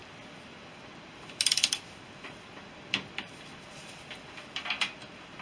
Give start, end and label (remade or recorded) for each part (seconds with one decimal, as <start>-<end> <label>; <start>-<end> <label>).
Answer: 0.0-5.4 recorded